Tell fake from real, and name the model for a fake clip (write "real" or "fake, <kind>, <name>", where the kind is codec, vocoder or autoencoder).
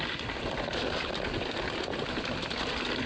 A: real